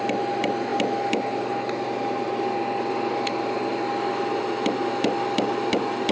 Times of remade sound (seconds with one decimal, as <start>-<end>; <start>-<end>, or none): none